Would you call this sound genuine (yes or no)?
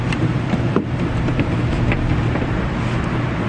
no